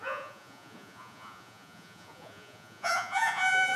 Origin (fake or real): fake